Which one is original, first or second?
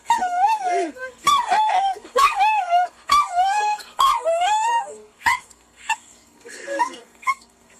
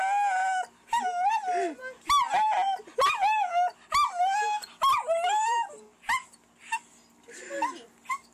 second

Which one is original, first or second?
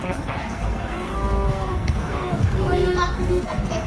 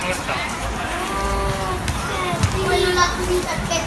second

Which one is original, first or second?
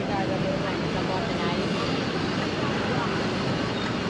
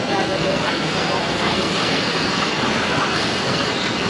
first